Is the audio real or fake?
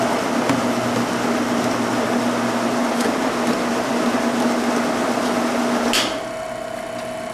real